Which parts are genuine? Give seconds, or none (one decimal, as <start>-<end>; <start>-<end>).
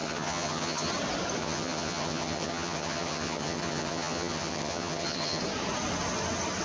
0.9-1.4; 5.4-6.6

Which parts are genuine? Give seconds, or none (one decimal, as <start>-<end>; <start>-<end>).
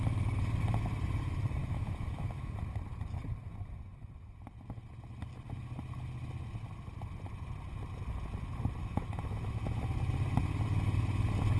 0.0-1.6; 2.5-8.8; 9.9-11.6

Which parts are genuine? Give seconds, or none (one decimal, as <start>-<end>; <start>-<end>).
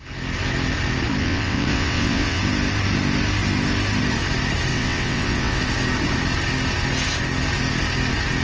0.0-1.2; 2.4-4.7; 5.6-8.4